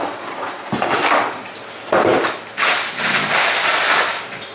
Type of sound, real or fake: real